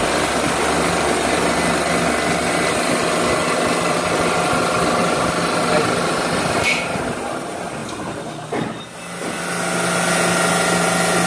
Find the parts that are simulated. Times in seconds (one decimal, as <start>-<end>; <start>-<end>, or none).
none